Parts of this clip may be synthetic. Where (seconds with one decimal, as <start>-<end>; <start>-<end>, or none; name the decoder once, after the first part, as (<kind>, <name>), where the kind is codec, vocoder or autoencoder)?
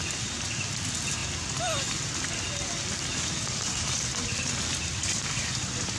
none